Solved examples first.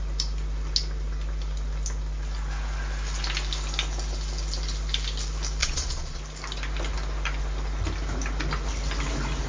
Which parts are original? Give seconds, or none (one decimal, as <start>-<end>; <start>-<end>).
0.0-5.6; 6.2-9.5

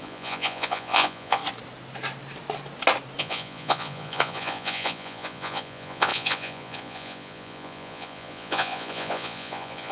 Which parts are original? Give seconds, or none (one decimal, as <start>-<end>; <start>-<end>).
1.4-3.2

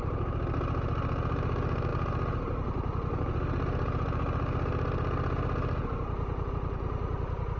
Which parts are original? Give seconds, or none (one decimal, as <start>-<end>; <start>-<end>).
0.0-7.6

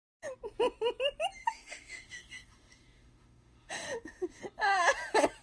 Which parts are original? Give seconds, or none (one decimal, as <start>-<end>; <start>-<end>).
0.0-1.4; 4.4-5.4

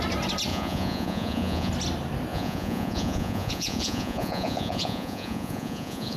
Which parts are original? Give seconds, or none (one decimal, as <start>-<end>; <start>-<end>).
0.0-0.5; 1.7-2.3